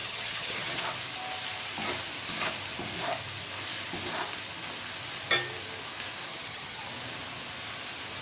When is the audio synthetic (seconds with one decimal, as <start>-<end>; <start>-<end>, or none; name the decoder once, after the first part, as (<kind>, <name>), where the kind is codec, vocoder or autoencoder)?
0.0-0.8 (vocoder, HiFi-GAN); 6.3-6.8